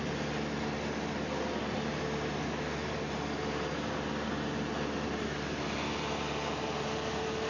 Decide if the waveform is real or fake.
real